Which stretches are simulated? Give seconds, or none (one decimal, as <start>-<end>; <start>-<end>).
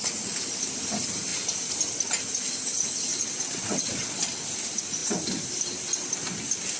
3.1-4.1